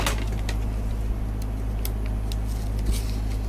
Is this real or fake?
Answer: real